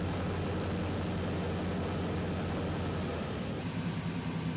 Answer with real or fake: real